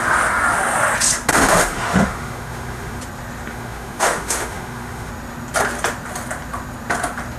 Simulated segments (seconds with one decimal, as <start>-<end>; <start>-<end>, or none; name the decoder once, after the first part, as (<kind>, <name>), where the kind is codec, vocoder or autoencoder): 1.3-3.0 (autoencoder, DAC-VAE); 3.5-5.1